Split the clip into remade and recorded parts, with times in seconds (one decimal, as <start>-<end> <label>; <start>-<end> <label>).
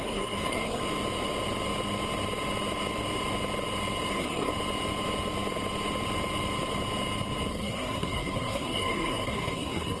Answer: 0.0-0.8 remade; 0.8-4.1 recorded; 4.1-4.5 remade; 4.5-7.5 recorded; 7.5-10.0 remade